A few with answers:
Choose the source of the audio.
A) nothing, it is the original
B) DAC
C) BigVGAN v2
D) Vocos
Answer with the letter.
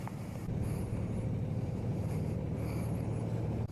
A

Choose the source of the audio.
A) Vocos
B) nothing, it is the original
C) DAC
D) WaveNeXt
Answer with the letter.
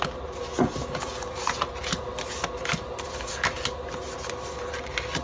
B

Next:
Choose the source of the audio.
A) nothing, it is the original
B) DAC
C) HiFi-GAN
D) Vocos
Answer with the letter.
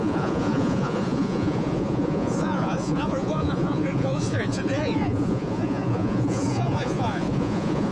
D